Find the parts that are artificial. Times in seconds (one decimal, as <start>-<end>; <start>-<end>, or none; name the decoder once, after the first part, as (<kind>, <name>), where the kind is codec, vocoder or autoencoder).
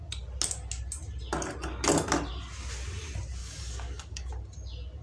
3.4-4.3 (codec, DAC)